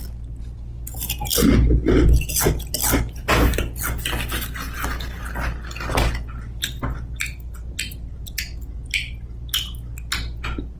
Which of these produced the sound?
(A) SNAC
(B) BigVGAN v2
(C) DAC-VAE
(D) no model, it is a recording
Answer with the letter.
D